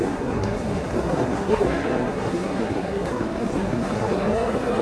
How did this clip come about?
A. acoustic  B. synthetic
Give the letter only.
B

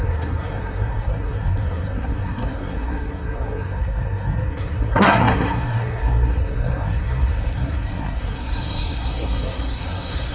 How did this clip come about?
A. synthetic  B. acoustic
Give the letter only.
A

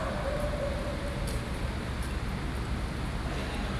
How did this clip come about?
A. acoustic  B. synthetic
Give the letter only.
A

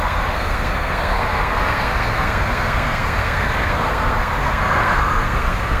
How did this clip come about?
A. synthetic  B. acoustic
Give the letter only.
A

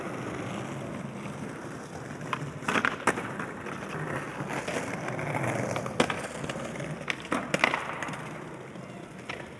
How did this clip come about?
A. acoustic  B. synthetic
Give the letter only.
A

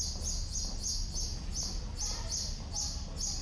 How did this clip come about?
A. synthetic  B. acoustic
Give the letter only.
B